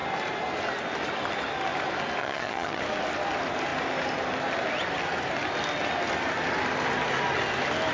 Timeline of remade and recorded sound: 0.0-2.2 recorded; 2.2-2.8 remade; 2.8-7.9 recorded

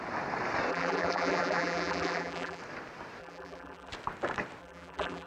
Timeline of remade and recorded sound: 0.0-0.7 recorded; 0.7-2.6 remade; 2.6-3.2 recorded; 3.2-3.9 remade; 3.9-4.6 recorded; 4.6-5.3 remade

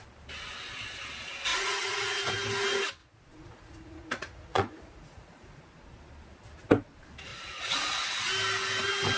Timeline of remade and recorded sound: 0.0-1.5 recorded; 1.5-2.2 remade; 2.2-3.0 recorded; 3.0-5.6 remade; 5.6-7.3 recorded; 7.3-8.2 remade; 8.2-9.2 recorded

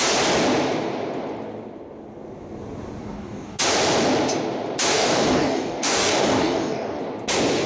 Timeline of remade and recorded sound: 0.0-3.0 recorded; 3.0-3.6 remade; 3.6-4.9 recorded; 4.9-7.0 remade; 7.0-7.7 recorded

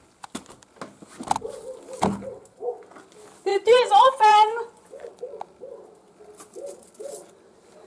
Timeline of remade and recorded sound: 0.0-3.5 recorded; 3.5-5.1 remade; 5.1-7.9 recorded

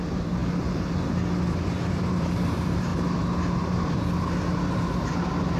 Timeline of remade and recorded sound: 0.0-0.4 remade; 0.4-1.9 recorded; 1.9-2.9 remade; 2.9-4.7 recorded; 4.7-5.6 remade

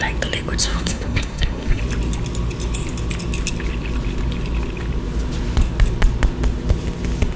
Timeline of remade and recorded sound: 0.0-0.6 recorded; 0.6-1.8 remade; 1.8-7.4 recorded

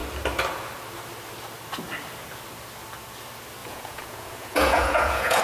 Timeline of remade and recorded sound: 0.0-3.6 recorded; 3.6-5.4 remade